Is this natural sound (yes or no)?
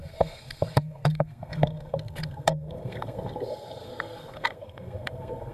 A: no